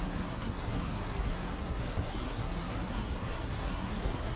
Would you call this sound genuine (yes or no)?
no